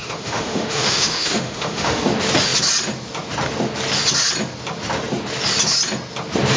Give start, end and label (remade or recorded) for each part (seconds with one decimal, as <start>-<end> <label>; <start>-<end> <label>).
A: 0.0-2.0 remade; 2.0-6.6 recorded